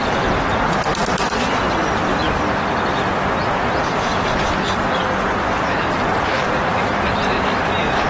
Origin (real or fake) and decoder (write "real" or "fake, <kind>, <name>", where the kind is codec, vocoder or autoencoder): fake, vocoder, BigVGAN v2